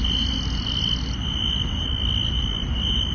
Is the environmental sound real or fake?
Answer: real